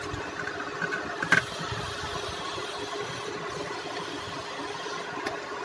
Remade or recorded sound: recorded